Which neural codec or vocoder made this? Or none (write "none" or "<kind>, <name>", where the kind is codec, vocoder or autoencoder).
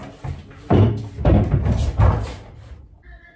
none